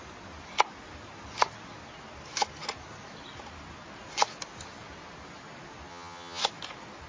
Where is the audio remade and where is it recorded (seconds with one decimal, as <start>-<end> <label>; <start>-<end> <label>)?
0.0-5.9 recorded; 5.9-6.4 remade; 6.4-7.1 recorded